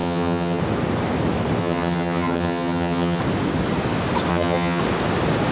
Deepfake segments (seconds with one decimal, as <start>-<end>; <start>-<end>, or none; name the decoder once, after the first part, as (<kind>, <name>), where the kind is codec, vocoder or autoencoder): 0.0-0.6 (vocoder, HiFi-GAN); 1.6-3.2; 4.3-4.8